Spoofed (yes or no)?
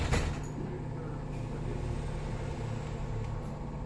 no